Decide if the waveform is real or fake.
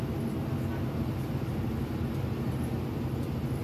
real